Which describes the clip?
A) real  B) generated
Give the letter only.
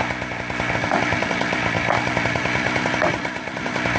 A